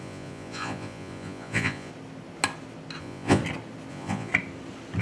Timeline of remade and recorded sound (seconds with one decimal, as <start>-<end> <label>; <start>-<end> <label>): 0.0-1.9 remade; 1.9-3.0 recorded; 3.0-3.4 remade; 3.4-3.9 recorded; 3.9-4.3 remade; 4.3-5.0 recorded